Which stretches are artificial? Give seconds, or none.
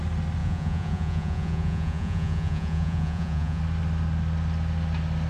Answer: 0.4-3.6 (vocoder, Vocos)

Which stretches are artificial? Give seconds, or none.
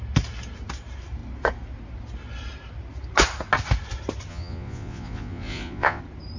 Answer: 4.3-6.0 (vocoder, Vocos)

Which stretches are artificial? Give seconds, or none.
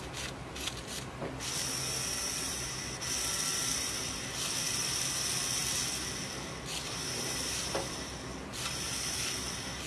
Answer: none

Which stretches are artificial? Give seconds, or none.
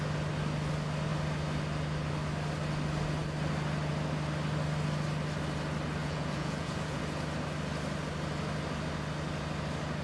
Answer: 6.0-7.0 (vocoder, Vocos)